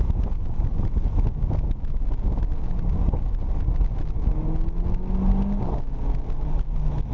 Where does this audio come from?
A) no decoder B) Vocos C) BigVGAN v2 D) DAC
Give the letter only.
A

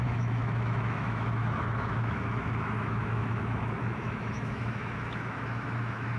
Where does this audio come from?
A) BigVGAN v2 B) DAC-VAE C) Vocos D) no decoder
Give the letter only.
B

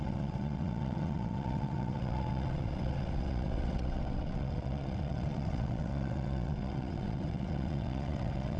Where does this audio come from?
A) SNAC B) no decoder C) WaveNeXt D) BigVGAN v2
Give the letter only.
C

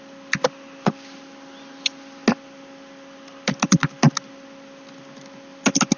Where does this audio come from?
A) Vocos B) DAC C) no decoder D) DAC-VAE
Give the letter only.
C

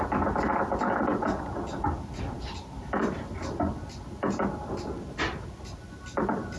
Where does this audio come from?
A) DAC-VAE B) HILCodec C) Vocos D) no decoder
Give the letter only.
D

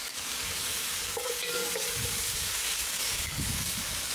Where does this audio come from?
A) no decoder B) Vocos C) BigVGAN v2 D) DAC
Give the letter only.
D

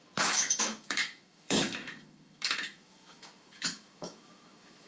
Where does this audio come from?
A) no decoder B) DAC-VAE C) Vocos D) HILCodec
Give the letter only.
B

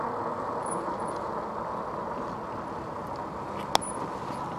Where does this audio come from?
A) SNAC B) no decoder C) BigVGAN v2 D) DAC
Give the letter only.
B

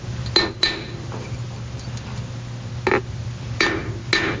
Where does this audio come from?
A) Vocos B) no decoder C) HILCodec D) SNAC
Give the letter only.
B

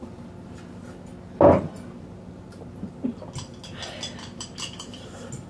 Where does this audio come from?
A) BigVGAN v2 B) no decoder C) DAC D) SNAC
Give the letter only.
B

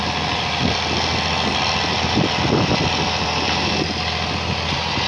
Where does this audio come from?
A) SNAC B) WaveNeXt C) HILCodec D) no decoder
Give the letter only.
D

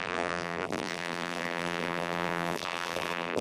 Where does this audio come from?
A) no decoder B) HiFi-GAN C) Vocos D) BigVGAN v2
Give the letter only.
D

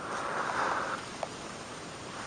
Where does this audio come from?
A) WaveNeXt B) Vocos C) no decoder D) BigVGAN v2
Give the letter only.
C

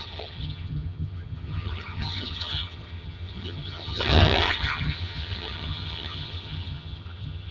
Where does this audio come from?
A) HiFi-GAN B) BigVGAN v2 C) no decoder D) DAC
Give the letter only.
A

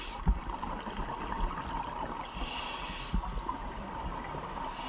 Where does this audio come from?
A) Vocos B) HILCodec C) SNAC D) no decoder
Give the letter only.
D